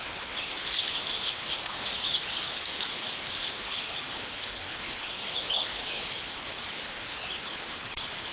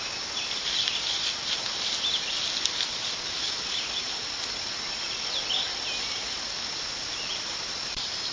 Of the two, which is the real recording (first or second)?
second